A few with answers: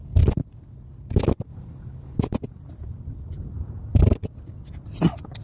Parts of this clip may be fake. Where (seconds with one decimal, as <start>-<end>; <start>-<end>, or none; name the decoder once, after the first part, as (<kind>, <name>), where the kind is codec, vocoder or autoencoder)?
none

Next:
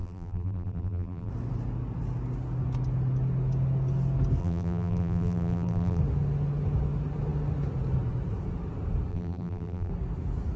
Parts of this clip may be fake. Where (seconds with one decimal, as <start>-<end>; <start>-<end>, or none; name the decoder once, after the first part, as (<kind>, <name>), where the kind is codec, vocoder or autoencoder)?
0.0-1.3 (vocoder, BigVGAN v2); 4.4-6.0; 9.1-9.9

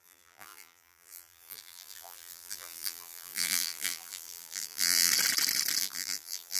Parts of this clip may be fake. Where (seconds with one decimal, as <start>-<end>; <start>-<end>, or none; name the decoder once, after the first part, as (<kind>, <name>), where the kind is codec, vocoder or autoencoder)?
0.0-5.1 (vocoder, BigVGAN v2); 5.8-6.6